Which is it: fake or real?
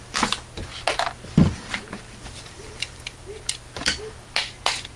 real